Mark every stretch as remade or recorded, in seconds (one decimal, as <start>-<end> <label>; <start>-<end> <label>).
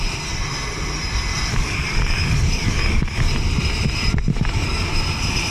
0.0-1.5 recorded; 1.5-3.3 remade; 3.3-4.3 recorded; 4.3-4.9 remade; 4.9-5.5 recorded